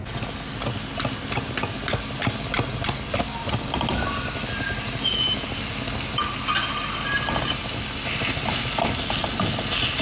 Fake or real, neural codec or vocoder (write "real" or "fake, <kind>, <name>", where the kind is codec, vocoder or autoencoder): real